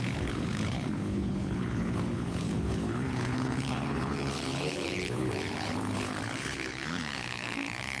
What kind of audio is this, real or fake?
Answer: fake